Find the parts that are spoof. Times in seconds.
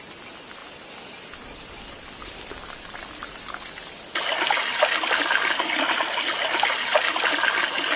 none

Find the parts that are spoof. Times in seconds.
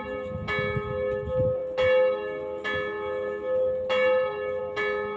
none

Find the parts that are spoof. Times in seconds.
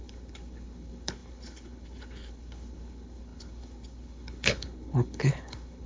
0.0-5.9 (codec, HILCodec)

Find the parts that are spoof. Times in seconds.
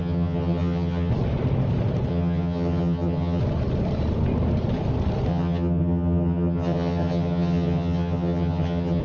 0.0-1.1 (vocoder, HiFi-GAN); 2.1-3.4; 5.3-9.0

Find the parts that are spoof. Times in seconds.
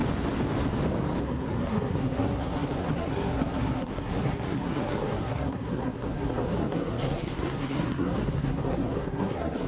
1.2-9.7 (codec, SNAC)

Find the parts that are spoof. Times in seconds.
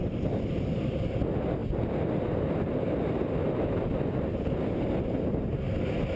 none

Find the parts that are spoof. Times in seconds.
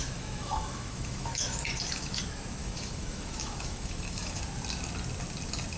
0.0-2.2 (autoencoder, DAC-VAE); 2.6-4.4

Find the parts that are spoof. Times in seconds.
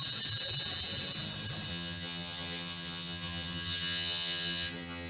1.7-5.1 (vocoder, HiFi-GAN)